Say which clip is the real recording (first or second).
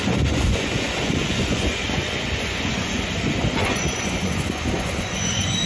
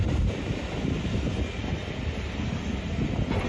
second